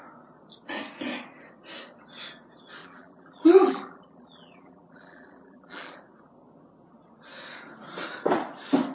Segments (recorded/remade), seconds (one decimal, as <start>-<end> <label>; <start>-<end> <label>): 0.0-2.8 recorded; 2.8-6.0 remade; 6.0-8.9 recorded